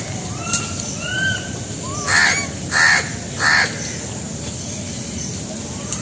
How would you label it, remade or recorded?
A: recorded